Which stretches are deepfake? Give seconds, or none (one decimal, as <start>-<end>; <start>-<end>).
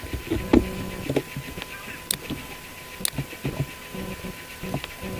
none